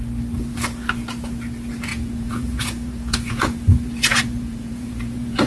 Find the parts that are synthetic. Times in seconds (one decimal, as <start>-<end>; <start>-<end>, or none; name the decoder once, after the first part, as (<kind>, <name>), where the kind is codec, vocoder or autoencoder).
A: 1.9-5.5 (vocoder, Vocos)